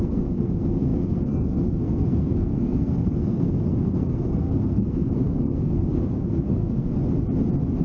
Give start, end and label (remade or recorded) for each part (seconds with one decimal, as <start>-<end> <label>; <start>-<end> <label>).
0.0-6.9 remade; 6.9-7.8 recorded